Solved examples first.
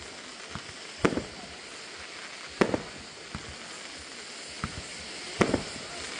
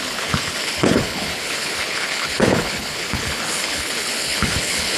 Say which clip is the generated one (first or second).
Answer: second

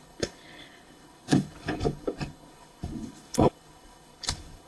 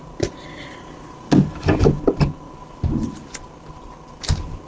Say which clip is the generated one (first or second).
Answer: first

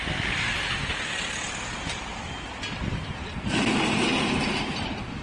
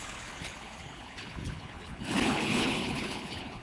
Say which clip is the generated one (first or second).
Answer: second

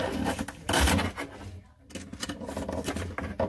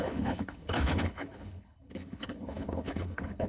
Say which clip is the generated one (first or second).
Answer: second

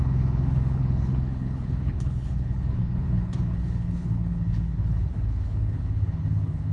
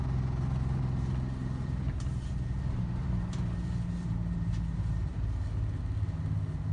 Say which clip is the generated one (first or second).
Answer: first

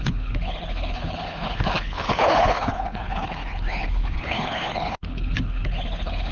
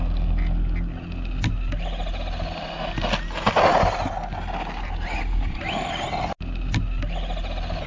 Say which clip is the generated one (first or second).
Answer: first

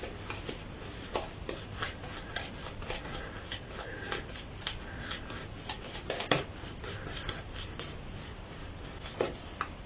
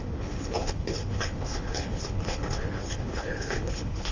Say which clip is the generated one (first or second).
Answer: second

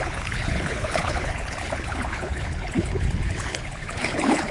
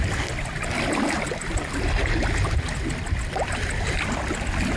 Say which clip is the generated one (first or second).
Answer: first